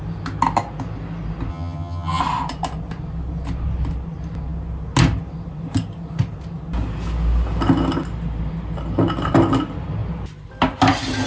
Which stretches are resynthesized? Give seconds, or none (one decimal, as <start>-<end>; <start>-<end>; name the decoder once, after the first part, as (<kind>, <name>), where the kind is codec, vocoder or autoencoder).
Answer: 1.5-2.2 (vocoder, HiFi-GAN)

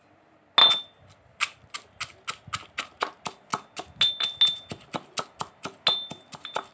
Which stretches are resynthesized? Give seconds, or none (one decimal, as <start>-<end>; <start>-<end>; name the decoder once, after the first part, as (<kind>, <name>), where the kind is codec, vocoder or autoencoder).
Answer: none